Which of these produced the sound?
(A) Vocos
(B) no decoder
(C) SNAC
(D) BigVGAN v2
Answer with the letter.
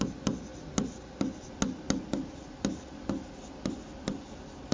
B